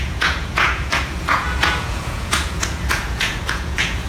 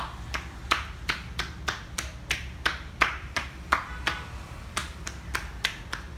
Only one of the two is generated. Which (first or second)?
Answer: first